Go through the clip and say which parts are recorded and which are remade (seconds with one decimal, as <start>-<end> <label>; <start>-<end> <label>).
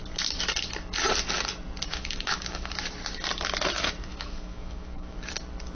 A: 0.0-1.9 recorded; 1.9-2.7 remade; 2.7-4.1 recorded; 4.1-5.2 remade; 5.2-5.7 recorded